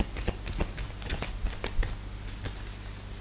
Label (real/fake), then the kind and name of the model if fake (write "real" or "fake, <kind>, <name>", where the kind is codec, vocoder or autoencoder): real